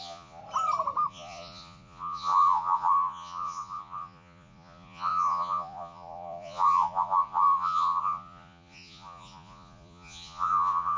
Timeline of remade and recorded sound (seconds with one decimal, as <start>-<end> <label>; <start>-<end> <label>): 0.0-0.4 remade; 0.4-1.1 recorded; 1.1-11.0 remade